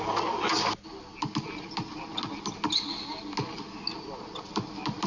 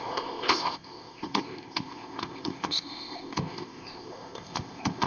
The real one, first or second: first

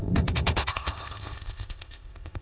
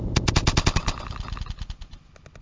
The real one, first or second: second